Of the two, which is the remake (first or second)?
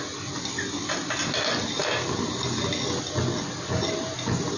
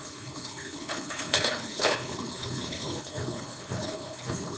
second